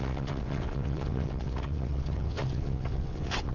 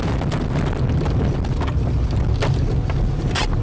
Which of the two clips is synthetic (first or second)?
first